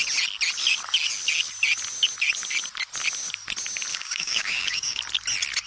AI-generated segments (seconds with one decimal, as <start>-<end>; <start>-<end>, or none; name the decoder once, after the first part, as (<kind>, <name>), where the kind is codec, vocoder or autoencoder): 3.9-5.0 (codec, DAC)